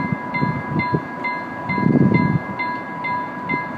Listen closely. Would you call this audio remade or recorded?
recorded